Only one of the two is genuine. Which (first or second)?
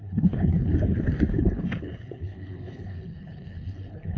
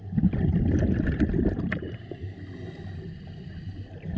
second